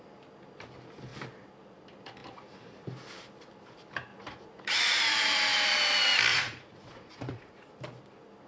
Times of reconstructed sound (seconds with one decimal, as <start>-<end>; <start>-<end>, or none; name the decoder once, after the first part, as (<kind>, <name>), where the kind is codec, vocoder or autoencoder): 4.1-5.0 (vocoder, Vocos); 6.3-7.7